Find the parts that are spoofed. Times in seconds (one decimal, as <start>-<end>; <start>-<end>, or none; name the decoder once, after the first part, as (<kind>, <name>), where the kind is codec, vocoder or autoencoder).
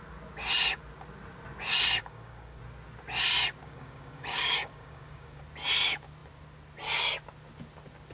2.0-2.6 (codec, DAC); 3.6-5.4